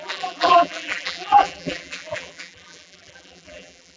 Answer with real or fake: fake